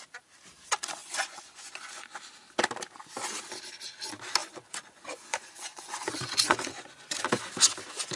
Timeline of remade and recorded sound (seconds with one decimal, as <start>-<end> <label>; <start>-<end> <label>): 0.0-1.0 recorded; 1.0-2.1 remade; 2.1-4.4 recorded; 4.4-7.2 remade; 7.2-8.2 recorded